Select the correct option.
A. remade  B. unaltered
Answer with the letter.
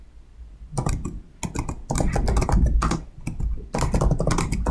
B